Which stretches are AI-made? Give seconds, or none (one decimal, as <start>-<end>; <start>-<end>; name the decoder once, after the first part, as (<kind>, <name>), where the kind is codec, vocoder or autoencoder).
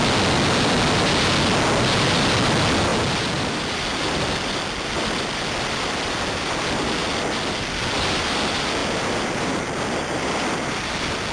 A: none